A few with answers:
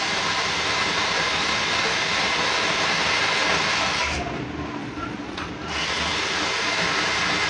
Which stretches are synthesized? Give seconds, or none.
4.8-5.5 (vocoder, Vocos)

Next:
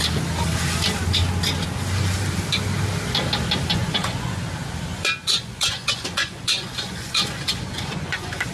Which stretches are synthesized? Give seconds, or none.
3.7-4.4 (vocoder, Vocos); 4.9-8.5

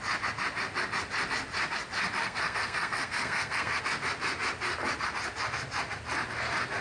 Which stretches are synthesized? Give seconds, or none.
2.2-3.8 (codec, SNAC)

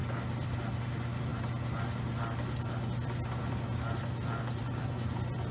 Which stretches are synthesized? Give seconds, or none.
none

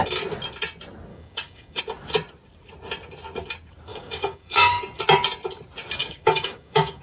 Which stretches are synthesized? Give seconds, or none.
1.1-1.8 (codec, DAC); 3.9-4.8; 6.0-7.0

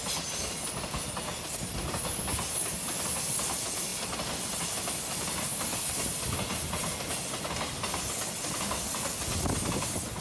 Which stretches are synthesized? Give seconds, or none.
none